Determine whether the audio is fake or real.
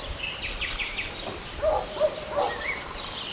fake